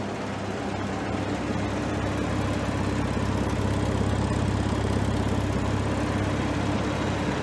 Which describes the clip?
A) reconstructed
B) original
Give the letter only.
B